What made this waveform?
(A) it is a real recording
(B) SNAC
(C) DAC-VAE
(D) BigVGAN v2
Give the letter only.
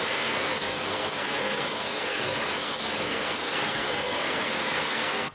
B